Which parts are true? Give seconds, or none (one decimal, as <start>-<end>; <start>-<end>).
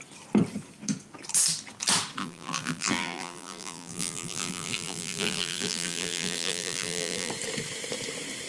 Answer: 0.0-2.2; 7.3-8.5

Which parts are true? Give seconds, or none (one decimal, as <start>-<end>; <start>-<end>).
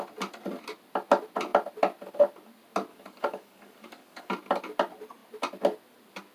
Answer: 0.0-2.9; 4.3-6.3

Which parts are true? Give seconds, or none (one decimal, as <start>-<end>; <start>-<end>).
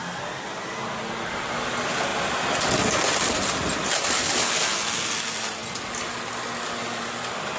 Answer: 0.0-7.6